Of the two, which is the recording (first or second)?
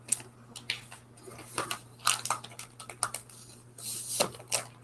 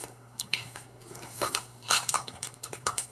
first